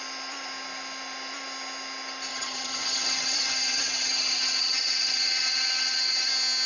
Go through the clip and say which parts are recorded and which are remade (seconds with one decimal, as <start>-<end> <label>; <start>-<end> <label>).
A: 0.0-2.3 recorded; 2.3-6.3 remade; 6.3-6.7 recorded